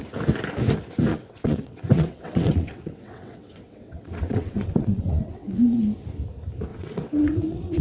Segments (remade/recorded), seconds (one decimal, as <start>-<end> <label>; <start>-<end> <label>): 0.0-1.1 recorded; 1.1-5.8 remade; 5.8-6.7 recorded; 6.7-7.8 remade